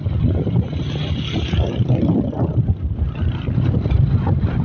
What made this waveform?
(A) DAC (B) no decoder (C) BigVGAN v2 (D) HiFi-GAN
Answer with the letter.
B